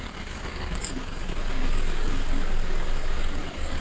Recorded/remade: remade